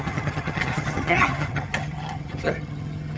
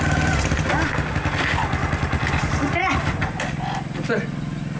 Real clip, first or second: second